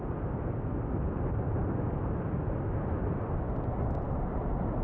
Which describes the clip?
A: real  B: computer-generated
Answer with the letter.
A